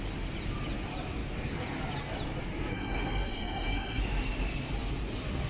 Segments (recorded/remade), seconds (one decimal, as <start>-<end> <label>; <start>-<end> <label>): 0.0-2.7 recorded; 2.7-4.0 remade; 4.0-5.5 recorded